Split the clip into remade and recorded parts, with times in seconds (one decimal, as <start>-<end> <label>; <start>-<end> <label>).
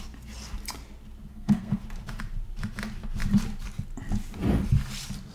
0.0-1.3 recorded; 1.3-1.8 remade; 1.8-5.3 recorded